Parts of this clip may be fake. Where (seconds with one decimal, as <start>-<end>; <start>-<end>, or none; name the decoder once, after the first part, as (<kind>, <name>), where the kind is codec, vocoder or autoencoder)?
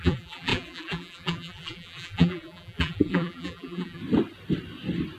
0.0-4.0 (vocoder, BigVGAN v2)